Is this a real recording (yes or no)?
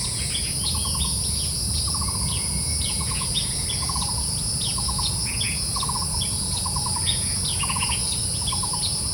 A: no